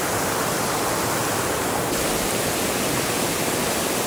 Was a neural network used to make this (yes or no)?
no